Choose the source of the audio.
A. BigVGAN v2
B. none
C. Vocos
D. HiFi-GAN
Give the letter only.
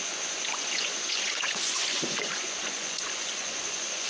C